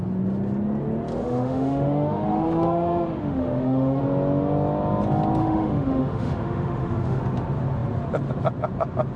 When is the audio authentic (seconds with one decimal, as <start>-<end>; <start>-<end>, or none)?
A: 0.0-1.2; 4.0-5.4; 7.2-9.2